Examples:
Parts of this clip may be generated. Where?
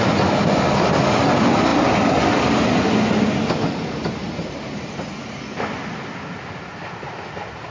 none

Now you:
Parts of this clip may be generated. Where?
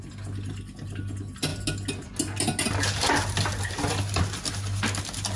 none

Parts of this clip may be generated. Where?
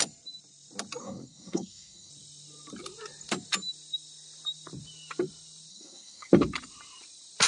1.0-2.1 (codec, SNAC); 5.7-6.3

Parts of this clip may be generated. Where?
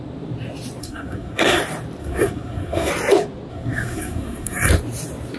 0.8-1.6 (codec, SNAC); 2.0-2.9; 3.5-4.7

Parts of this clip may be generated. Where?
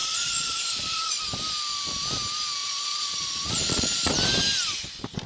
0.0-1.2 (vocoder, Vocos); 2.6-4.1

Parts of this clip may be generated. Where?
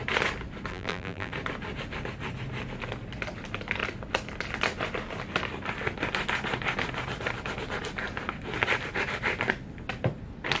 0.7-1.3 (vocoder, BigVGAN v2)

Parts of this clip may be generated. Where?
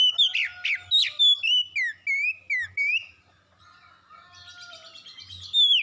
none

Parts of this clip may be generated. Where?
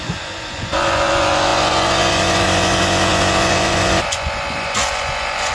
0.0-5.5 (vocoder, Vocos)